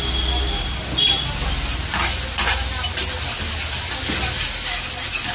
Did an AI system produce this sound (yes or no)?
no